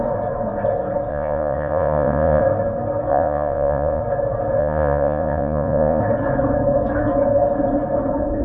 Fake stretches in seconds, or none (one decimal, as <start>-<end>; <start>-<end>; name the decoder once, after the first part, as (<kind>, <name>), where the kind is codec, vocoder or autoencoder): 1.1-2.4 (vocoder, Vocos); 3.1-4.0; 4.6-6.0